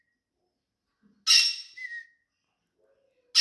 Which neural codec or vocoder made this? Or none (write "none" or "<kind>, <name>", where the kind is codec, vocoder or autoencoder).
none